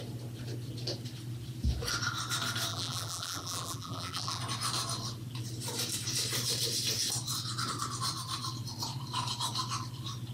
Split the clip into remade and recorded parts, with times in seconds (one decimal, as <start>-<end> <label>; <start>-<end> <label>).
0.0-2.7 recorded; 2.7-4.4 remade; 4.4-10.3 recorded